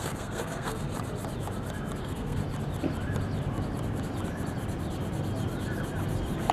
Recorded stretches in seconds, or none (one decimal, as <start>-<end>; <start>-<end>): 0.9-2.0; 2.4-6.5

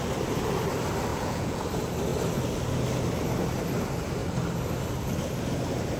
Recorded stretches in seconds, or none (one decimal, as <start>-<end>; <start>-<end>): 0.0-1.1; 1.6-6.0

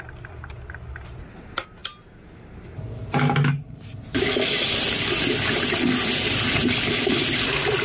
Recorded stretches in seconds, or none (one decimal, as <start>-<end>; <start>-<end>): 0.0-7.8

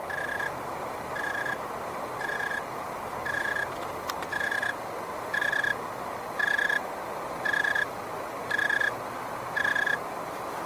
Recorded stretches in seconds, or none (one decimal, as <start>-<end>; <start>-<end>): 0.0-10.7

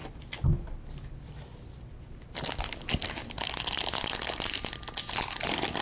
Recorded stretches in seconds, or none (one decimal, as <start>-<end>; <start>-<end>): 0.0-5.8

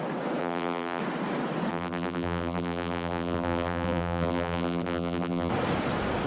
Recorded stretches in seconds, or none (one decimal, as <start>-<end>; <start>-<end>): 0.0-0.4; 1.0-1.7; 5.5-6.3

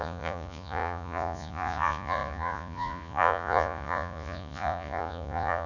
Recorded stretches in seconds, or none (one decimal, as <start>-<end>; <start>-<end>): none